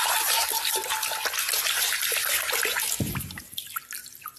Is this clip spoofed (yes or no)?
no